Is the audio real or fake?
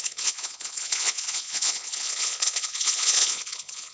fake